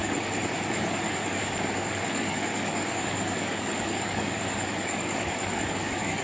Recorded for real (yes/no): no